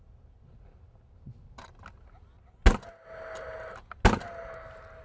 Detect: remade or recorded recorded